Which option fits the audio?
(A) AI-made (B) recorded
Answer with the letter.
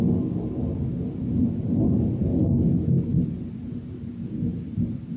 B